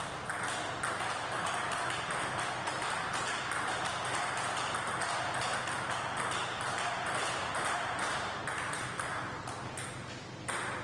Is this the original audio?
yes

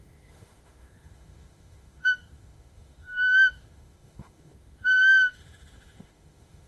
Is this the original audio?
no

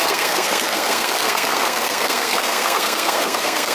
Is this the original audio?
no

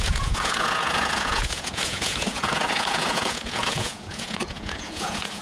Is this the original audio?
no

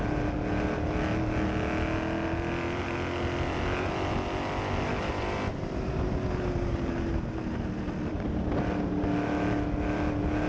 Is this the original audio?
yes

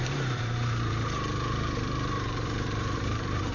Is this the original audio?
no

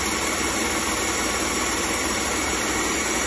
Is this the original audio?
yes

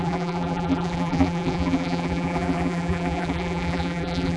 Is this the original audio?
no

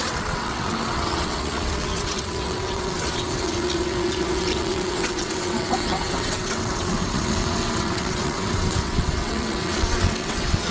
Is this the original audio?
no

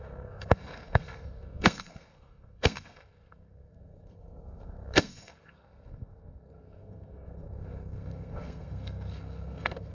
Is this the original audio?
no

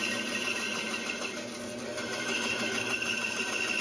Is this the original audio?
no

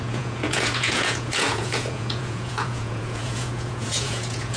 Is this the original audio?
no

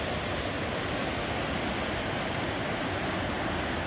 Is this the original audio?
yes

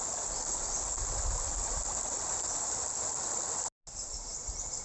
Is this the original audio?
yes